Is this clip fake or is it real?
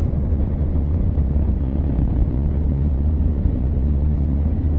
fake